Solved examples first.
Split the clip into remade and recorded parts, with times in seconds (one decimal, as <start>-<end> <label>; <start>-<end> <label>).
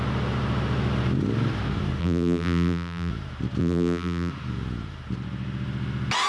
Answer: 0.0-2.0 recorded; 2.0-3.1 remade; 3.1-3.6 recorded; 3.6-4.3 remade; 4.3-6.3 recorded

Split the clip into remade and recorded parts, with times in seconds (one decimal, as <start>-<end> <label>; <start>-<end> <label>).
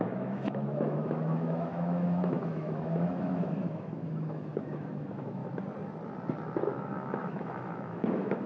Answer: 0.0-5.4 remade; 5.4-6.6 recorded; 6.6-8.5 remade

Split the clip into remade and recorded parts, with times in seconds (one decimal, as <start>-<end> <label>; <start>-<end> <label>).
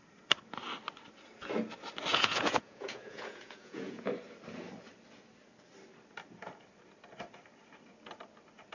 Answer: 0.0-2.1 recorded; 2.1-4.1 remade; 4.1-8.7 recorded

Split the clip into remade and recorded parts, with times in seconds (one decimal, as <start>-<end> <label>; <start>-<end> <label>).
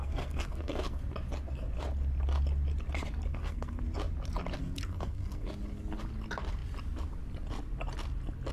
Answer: 0.0-1.0 remade; 1.0-3.3 recorded; 3.3-3.8 remade; 3.8-4.6 recorded; 4.6-5.5 remade; 5.5-8.5 recorded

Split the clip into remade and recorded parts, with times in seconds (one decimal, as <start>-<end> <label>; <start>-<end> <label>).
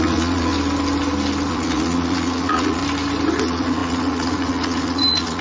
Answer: 0.0-0.5 remade; 0.5-1.5 recorded; 1.5-2.8 remade; 2.8-3.4 recorded; 3.4-5.4 remade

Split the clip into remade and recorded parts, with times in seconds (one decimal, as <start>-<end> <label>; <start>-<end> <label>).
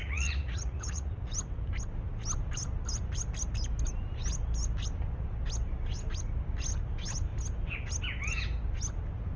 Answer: 0.0-1.1 remade; 1.1-9.4 recorded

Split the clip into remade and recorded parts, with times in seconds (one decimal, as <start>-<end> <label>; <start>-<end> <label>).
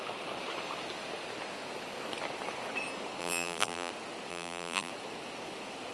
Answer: 0.0-3.2 recorded; 3.2-3.9 remade; 3.9-4.3 recorded; 4.3-4.9 remade; 4.9-5.9 recorded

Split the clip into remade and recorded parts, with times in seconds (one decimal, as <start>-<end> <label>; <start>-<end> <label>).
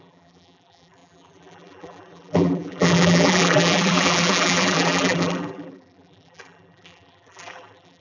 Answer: 0.0-8.0 remade